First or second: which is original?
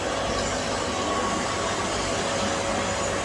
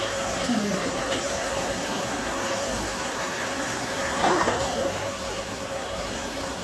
first